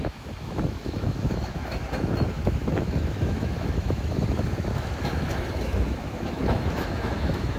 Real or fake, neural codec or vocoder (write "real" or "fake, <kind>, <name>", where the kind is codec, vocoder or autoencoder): fake, autoencoder, DAC-VAE